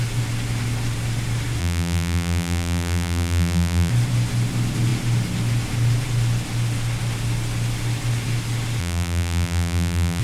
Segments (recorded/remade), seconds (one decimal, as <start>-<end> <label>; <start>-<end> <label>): 0.0-1.6 recorded; 1.6-3.9 remade; 3.9-8.8 recorded; 8.8-10.2 remade